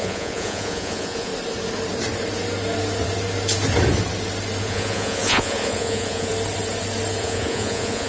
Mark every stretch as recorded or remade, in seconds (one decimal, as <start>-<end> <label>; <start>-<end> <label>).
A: 0.0-1.3 remade; 1.3-4.6 recorded; 4.6-6.3 remade; 6.3-7.2 recorded; 7.2-8.1 remade